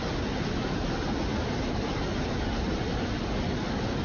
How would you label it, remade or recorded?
recorded